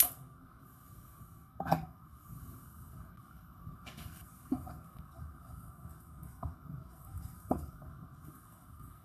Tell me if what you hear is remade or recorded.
remade